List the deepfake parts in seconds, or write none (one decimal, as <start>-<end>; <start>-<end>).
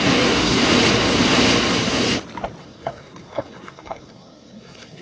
0.0-0.6; 2.6-5.0